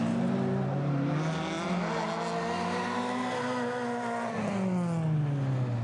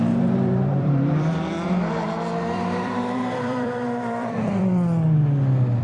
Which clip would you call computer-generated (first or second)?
second